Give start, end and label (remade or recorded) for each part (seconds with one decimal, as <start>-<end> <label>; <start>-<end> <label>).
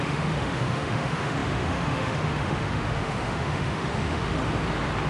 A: 0.0-4.4 remade; 4.4-5.1 recorded